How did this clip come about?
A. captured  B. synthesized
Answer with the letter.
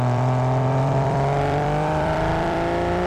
B